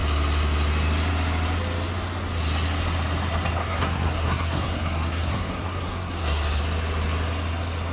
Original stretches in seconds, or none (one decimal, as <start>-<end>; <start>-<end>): 0.0-3.6; 6.6-7.9

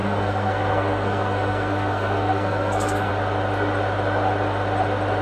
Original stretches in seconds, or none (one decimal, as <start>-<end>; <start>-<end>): 3.1-5.2

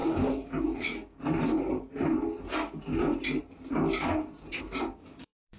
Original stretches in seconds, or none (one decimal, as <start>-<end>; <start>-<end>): 1.2-4.6

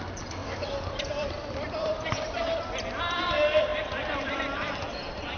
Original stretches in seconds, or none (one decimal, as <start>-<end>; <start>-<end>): none